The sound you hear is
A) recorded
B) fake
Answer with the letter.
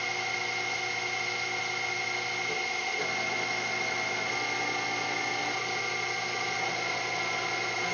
A